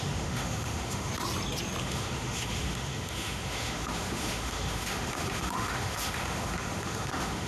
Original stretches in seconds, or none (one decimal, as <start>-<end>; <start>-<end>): 1.1-1.8